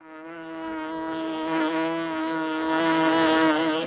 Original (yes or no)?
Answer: no